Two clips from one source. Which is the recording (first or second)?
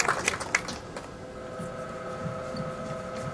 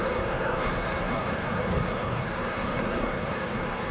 first